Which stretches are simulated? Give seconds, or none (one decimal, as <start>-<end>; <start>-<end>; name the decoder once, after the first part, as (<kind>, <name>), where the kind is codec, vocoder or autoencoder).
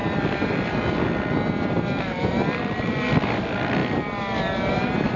0.0-3.1 (vocoder, BigVGAN v2)